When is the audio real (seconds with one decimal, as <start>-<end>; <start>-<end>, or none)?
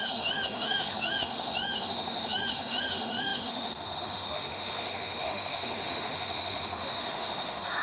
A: none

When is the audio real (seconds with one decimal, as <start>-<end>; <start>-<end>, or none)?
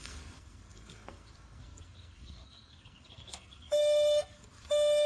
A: none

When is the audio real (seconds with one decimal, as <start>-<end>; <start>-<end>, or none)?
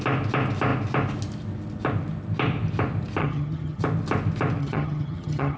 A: 0.0-3.2; 3.8-4.6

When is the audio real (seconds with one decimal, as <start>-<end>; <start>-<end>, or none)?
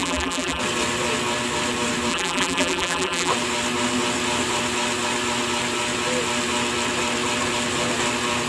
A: 0.6-2.1; 3.3-8.5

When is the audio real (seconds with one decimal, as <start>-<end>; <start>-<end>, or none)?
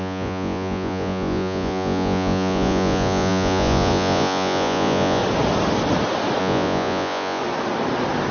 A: 5.2-6.4; 7.4-8.3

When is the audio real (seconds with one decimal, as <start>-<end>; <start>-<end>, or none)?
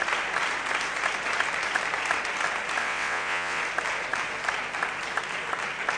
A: 0.0-2.8; 3.6-6.0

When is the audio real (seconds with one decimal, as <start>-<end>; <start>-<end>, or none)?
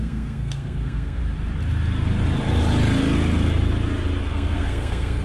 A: 1.2-4.3